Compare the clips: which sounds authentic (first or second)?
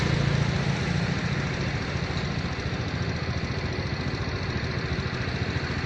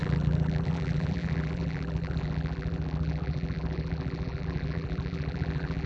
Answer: first